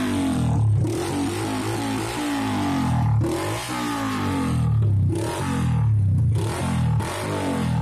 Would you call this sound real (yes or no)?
yes